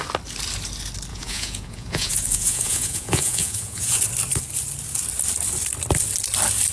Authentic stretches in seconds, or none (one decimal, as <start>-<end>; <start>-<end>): 0.0-1.1; 4.0-6.7